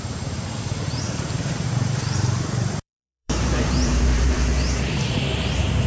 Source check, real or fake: fake